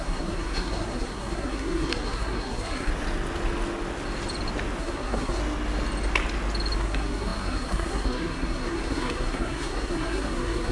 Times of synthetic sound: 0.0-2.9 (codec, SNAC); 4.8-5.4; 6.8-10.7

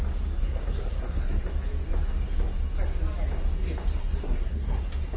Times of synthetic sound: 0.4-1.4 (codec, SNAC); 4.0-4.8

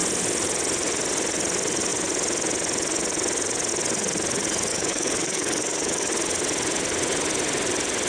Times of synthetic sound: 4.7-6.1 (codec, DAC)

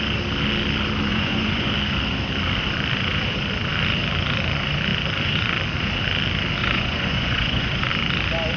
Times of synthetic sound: 1.1-1.7 (vocoder, Vocos); 6.6-7.9

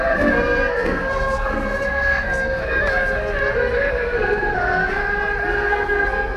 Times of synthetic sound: 0.0-2.8 (codec, SNAC); 3.8-5.0; 5.5-6.4

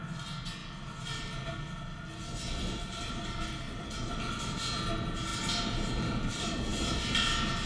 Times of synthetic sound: none

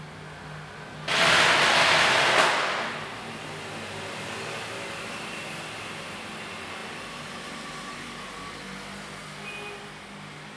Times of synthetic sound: none

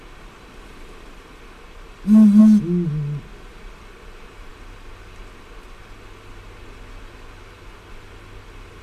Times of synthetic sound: 0.0-2.4 (vocoder, BigVGAN v2); 3.3-4.5; 7.6-8.8